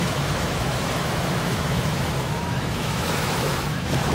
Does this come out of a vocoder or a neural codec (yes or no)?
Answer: yes